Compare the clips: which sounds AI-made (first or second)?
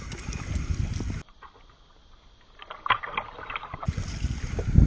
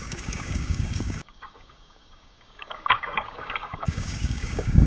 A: second